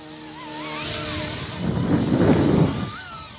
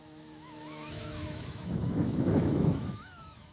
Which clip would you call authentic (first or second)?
first